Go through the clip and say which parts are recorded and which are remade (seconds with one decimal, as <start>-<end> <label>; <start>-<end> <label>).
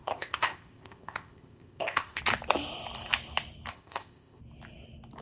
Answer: 0.0-2.2 remade; 2.2-3.7 recorded; 3.7-4.4 remade; 4.4-5.2 recorded